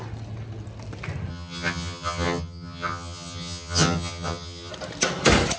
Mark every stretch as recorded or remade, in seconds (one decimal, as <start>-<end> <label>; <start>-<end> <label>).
0.0-1.3 recorded; 1.3-4.7 remade; 4.7-5.6 recorded